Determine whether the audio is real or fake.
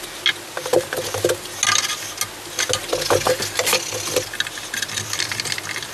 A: real